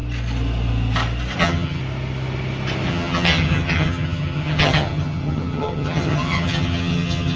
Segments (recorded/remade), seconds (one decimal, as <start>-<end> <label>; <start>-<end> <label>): 0.0-1.4 recorded; 1.4-1.8 remade; 1.8-2.9 recorded; 2.9-7.4 remade